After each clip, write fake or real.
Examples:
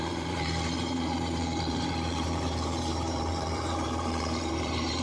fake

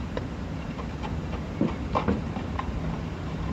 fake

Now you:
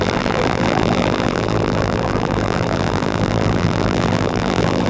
fake